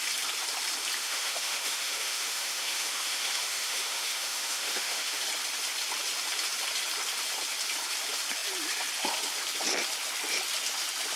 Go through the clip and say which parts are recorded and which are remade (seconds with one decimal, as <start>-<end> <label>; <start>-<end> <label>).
0.0-1.0 recorded; 1.0-5.2 remade; 5.2-11.2 recorded